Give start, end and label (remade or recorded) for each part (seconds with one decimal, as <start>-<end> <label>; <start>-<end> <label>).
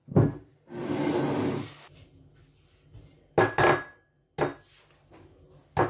0.0-5.9 recorded